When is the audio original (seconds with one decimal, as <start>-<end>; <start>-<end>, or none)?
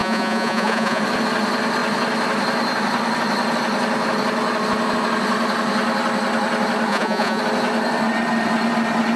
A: 1.0-6.9; 7.4-9.2